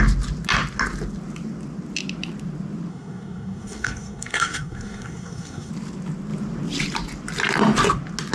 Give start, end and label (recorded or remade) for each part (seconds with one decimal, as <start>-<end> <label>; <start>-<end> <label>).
0.0-2.9 recorded; 2.9-5.7 remade; 5.7-8.3 recorded